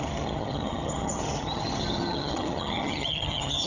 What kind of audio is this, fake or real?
fake